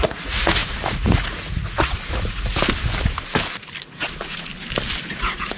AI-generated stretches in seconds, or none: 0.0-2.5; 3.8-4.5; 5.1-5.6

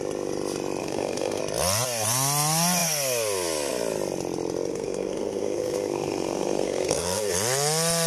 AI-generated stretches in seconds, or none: 0.8-1.4; 4.7-7.3